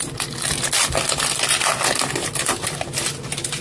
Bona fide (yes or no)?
yes